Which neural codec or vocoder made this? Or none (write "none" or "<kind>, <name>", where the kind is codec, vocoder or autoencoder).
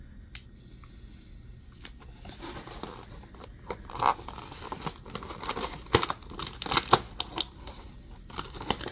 none